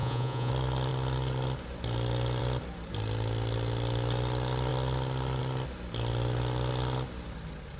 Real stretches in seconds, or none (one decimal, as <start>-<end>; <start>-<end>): 0.5-7.8